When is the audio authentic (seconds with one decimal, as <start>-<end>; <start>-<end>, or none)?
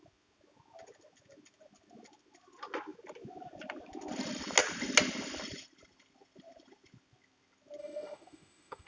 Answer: 0.0-7.8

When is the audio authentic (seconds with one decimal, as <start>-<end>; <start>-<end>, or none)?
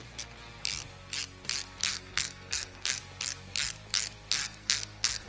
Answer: 0.0-1.9; 3.0-4.4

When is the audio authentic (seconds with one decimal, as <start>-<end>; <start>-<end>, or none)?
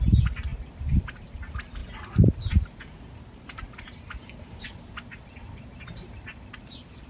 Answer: none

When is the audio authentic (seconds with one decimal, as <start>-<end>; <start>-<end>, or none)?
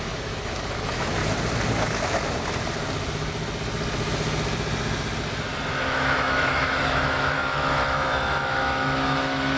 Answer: 1.2-5.7